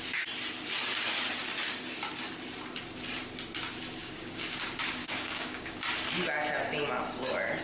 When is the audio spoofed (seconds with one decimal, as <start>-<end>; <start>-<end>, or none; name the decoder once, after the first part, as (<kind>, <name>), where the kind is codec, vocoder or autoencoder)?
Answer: 4.0-4.6 (codec, DAC); 5.0-5.8